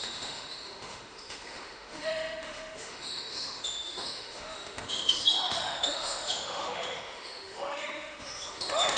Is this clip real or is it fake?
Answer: fake